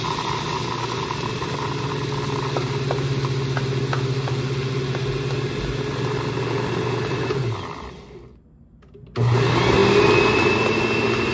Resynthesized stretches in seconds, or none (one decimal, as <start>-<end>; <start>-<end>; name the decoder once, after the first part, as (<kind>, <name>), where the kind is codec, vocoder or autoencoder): none